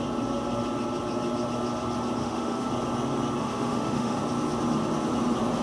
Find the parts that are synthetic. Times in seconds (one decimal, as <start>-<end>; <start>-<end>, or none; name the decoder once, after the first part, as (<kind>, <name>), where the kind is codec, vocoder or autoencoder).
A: 2.2-2.7 (autoencoder, DAC-VAE); 3.4-4.2